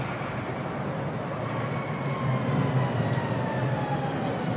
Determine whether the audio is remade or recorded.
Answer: recorded